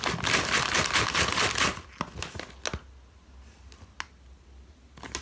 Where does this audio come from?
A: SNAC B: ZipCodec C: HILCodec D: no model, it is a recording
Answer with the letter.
D